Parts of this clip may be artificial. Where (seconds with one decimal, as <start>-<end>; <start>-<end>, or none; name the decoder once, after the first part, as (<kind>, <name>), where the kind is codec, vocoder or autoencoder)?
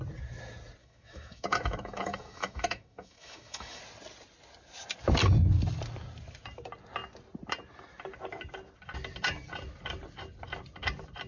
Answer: 0.8-3.8 (autoencoder, DAC-VAE)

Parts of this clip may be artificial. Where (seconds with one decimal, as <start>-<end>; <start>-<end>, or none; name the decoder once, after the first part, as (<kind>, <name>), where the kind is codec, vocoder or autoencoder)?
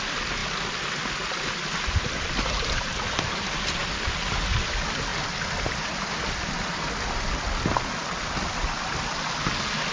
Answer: none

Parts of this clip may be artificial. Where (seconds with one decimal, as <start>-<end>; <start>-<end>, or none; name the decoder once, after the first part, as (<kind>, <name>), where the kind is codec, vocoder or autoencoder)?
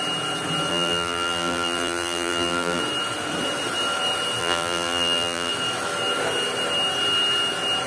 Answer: 0.7-2.8 (vocoder, BigVGAN v2); 4.4-5.5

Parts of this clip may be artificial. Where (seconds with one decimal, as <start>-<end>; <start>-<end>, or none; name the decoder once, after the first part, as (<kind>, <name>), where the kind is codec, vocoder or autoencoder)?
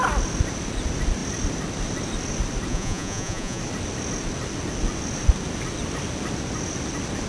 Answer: 2.7-3.6 (vocoder, Vocos)